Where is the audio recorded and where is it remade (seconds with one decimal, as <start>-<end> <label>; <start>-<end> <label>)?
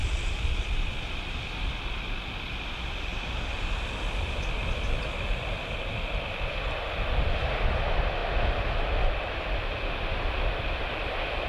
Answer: 0.0-1.8 remade; 1.8-3.1 recorded; 3.1-5.9 remade; 5.9-11.5 recorded